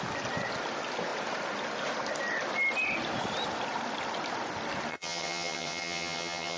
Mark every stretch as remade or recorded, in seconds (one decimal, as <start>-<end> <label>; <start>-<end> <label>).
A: 0.0-4.9 recorded; 4.9-6.6 remade